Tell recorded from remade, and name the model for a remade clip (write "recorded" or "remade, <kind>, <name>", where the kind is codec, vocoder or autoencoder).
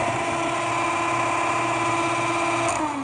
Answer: recorded